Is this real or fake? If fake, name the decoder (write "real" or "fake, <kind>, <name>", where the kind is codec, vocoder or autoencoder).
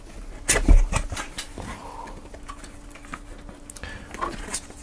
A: real